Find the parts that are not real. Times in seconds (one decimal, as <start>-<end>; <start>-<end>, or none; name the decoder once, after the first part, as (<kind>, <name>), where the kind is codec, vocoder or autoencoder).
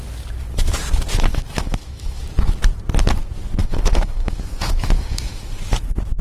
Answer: 1.3-2.2 (autoencoder, DAC-VAE); 3.6-5.5